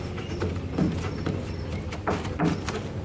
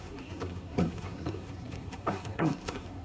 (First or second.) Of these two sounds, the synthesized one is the second